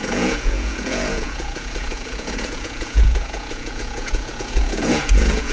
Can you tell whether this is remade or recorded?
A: remade